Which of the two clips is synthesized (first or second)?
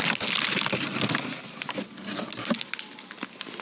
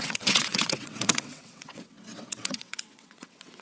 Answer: second